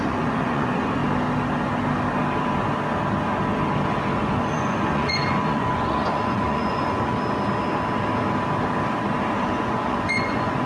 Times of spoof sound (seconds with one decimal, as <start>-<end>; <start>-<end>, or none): 0.0-1.0; 4.2-7.1; 9.6-10.7